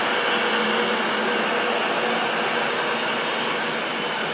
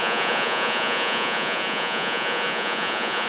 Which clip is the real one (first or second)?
first